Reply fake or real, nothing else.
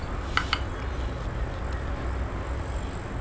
real